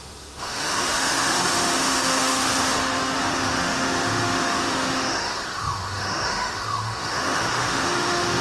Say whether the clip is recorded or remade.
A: remade